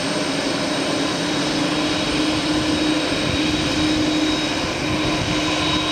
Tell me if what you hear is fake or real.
real